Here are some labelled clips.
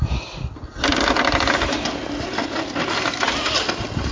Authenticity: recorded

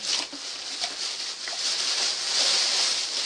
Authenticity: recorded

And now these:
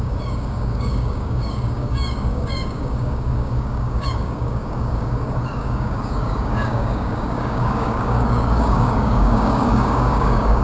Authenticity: remade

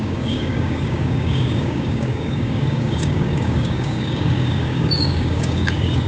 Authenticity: remade